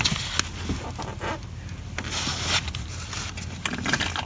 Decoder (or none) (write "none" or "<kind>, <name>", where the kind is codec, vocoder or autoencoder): none